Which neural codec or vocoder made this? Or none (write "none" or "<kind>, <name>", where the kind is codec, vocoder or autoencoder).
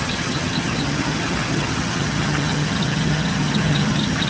vocoder, HiFi-GAN